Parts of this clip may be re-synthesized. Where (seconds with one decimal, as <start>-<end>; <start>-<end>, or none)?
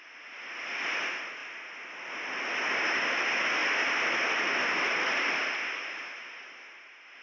none